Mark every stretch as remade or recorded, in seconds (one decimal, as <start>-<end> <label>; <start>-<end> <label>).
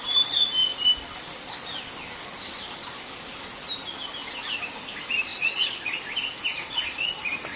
0.0-5.3 recorded; 5.3-6.0 remade; 6.0-6.5 recorded; 6.5-7.1 remade; 7.1-7.6 recorded